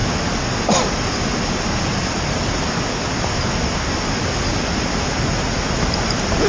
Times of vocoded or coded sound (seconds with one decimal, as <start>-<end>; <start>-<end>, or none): none